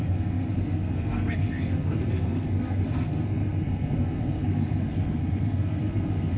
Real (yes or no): no